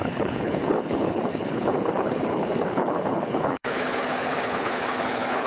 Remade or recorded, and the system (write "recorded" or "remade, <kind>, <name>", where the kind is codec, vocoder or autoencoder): remade, codec, HILCodec